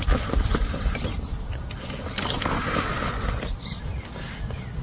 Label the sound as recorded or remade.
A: recorded